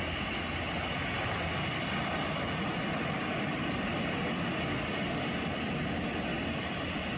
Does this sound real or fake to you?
real